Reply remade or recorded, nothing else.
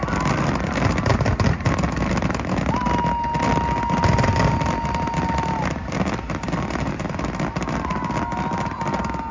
recorded